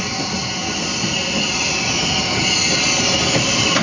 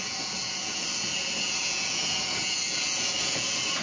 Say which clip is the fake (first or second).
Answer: second